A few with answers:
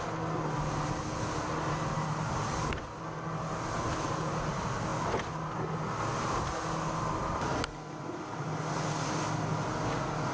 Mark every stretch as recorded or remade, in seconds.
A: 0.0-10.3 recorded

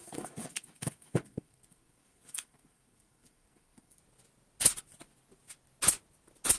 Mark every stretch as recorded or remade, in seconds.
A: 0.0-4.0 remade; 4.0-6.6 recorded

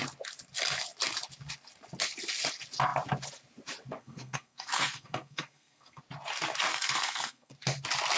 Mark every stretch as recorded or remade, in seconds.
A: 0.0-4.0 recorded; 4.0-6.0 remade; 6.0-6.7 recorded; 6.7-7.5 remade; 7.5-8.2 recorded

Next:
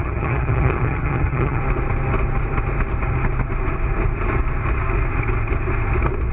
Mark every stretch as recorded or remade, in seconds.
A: 0.0-1.6 remade; 1.6-6.3 recorded

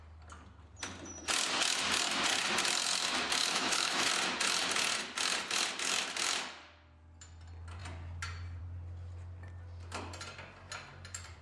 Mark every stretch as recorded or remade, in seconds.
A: 0.0-3.4 recorded; 3.4-4.1 remade; 4.1-11.4 recorded

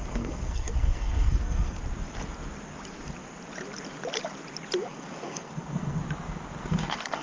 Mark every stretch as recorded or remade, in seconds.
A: 0.0-1.8 remade; 1.8-4.8 recorded; 4.8-6.0 remade; 6.0-6.6 recorded; 6.6-7.2 remade

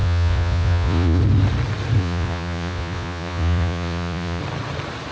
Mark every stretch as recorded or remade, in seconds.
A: 0.0-1.2 remade; 1.2-2.0 recorded; 2.0-4.4 remade; 4.4-5.1 recorded